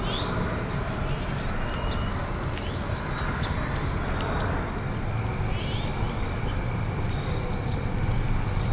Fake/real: real